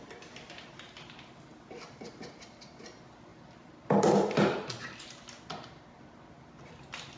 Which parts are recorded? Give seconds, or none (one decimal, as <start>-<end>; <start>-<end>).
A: 0.0-7.2